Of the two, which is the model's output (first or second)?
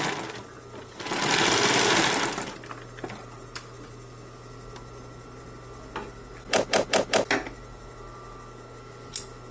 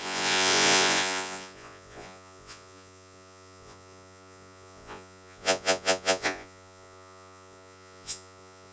second